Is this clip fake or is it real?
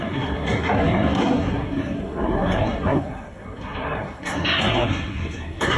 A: fake